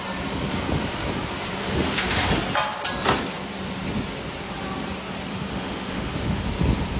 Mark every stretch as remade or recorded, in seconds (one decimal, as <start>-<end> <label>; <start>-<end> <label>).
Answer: 0.0-1.6 recorded; 1.6-2.3 remade; 2.3-5.3 recorded; 5.3-6.5 remade; 6.5-7.0 recorded

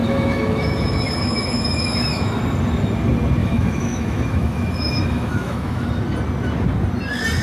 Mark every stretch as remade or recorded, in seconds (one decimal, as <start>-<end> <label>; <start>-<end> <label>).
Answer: 0.0-2.4 remade; 2.4-3.4 recorded; 3.4-5.9 remade; 5.9-7.4 recorded

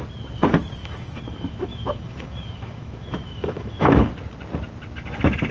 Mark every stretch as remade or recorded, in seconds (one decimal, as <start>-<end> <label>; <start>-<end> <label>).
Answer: 0.0-0.8 recorded; 0.8-4.1 remade; 4.1-5.5 recorded

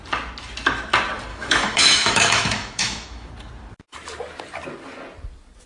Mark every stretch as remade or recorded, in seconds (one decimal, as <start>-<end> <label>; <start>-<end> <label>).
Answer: 0.0-1.3 recorded; 1.3-3.3 remade; 3.3-5.7 recorded

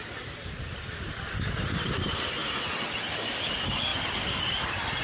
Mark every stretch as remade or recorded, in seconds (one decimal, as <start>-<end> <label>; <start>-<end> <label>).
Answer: 0.0-5.0 recorded

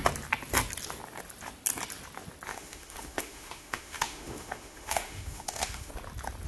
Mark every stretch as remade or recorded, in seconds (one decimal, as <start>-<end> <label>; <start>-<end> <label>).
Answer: 0.0-2.5 recorded; 2.5-5.9 remade; 5.9-6.5 recorded

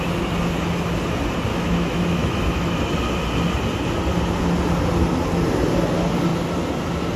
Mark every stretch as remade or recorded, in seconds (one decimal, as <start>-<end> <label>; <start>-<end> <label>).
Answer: 0.0-1.5 recorded; 1.5-2.8 remade; 2.8-7.2 recorded